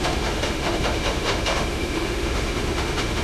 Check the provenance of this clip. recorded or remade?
remade